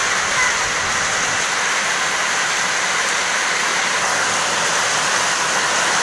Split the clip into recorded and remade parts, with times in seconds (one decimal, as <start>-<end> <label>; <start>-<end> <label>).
0.0-3.7 recorded; 3.7-4.4 remade; 4.4-6.0 recorded